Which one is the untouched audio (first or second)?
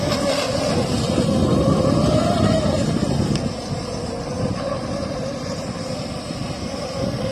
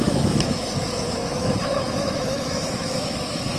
first